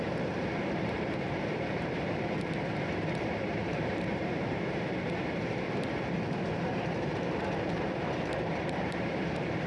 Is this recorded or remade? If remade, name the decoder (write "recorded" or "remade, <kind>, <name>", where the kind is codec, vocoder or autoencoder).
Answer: remade, vocoder, BigVGAN v2